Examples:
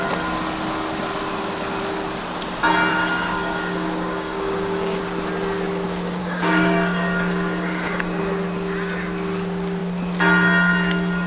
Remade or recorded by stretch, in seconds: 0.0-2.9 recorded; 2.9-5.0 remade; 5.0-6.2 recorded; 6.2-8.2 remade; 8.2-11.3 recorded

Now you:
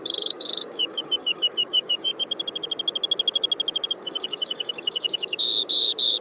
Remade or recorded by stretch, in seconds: 0.0-2.1 remade; 2.1-3.9 recorded; 3.9-6.2 remade

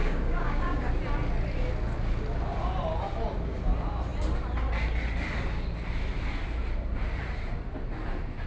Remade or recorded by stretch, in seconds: 0.0-0.9 remade; 0.9-8.5 recorded